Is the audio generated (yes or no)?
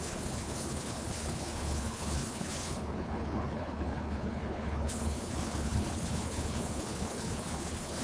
yes